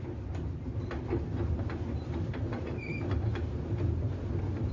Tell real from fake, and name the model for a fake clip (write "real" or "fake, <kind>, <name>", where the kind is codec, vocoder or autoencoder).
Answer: real